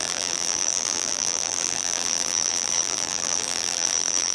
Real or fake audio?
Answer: fake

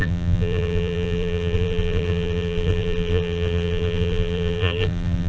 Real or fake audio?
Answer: fake